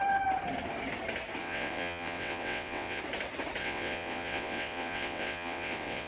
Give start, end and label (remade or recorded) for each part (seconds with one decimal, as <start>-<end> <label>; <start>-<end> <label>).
0.0-1.4 recorded; 1.4-3.0 remade; 3.0-3.6 recorded; 3.6-6.1 remade